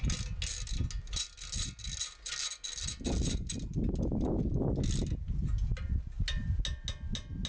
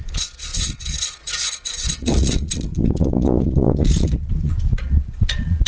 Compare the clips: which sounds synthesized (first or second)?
second